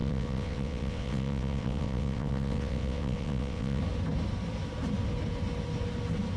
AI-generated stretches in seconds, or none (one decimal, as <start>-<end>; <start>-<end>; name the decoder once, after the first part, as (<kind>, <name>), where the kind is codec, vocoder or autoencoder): 0.0-3.8 (vocoder, WaveNeXt)

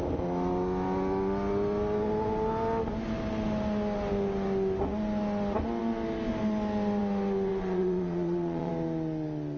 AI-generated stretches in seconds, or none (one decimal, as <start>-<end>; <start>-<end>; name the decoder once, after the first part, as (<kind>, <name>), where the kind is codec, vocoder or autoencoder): 7.5-8.7 (vocoder, WaveNeXt)

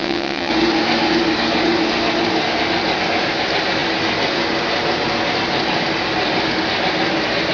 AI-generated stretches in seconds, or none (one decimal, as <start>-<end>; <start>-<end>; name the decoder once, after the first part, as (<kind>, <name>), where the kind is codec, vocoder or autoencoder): 0.0-0.5 (vocoder, WaveNeXt)